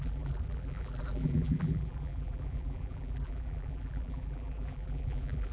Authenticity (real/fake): fake